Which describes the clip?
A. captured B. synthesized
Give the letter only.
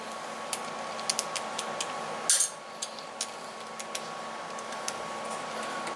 A